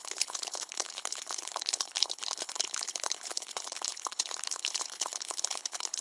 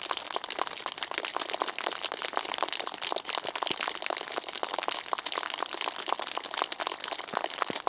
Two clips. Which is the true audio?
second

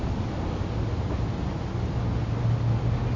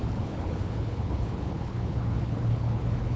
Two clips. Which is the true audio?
first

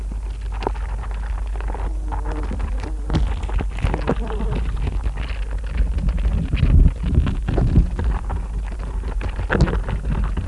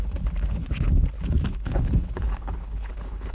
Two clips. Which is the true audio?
first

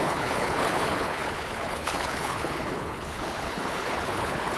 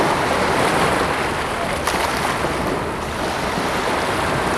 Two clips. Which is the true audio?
second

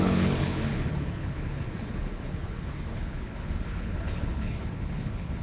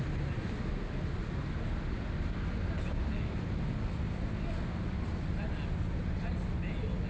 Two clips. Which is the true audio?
second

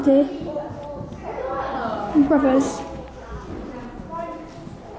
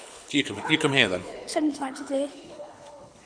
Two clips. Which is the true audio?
first